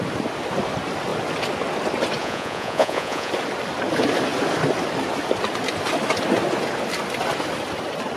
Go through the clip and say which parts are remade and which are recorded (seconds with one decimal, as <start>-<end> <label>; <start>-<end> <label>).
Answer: 0.0-2.2 recorded; 2.2-3.3 remade; 3.3-8.2 recorded